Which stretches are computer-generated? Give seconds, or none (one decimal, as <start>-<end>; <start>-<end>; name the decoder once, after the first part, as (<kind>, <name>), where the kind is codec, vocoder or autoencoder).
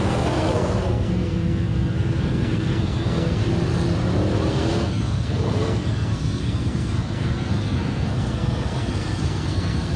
0.0-3.4 (codec, SNAC); 4.5-10.0